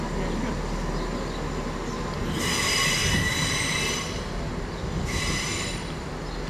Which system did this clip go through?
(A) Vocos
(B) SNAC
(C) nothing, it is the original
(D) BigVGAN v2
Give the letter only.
C